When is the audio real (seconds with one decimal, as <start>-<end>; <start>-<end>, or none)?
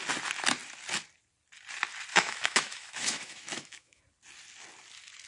0.0-2.1; 4.0-5.3